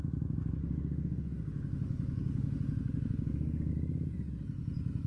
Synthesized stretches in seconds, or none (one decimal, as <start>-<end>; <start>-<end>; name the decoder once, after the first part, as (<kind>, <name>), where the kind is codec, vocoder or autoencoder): 0.6-3.7 (autoencoder, DAC-VAE)